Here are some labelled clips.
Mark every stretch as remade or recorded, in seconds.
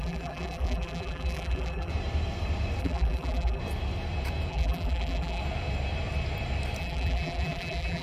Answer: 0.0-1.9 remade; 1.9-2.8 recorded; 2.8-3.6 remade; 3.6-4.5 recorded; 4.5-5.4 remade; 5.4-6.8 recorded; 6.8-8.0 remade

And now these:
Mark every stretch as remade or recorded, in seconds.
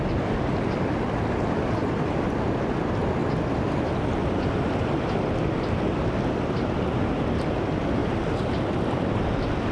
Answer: 0.0-8.0 recorded; 8.0-8.6 remade; 8.6-9.7 recorded